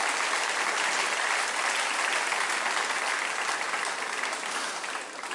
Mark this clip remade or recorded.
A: recorded